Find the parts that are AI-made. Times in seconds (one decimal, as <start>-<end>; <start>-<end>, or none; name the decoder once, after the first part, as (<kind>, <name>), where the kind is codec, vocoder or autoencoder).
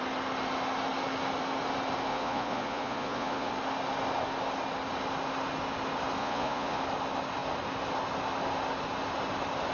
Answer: 2.1-3.5 (vocoder, Vocos); 6.2-6.8